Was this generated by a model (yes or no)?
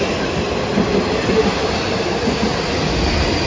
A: no